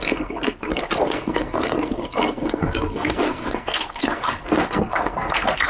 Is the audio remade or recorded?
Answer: remade